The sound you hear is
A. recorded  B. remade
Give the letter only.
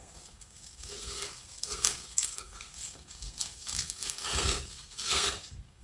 B